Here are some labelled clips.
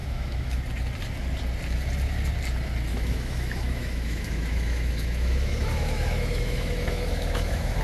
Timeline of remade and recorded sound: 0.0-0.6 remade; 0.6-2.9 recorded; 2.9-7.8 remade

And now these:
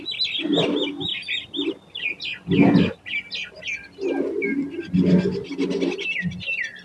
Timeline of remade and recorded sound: 0.0-6.8 recorded

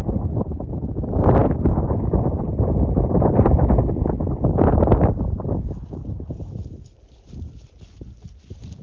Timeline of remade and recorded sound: 0.0-8.8 remade